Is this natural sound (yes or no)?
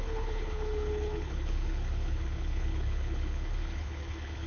no